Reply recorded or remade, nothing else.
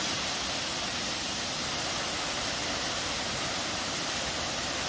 remade